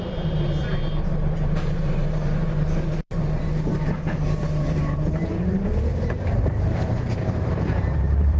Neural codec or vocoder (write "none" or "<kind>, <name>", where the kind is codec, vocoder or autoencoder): vocoder, BigVGAN v2